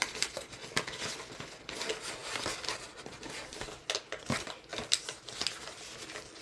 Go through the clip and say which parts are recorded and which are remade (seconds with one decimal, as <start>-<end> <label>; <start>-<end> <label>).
0.0-6.4 recorded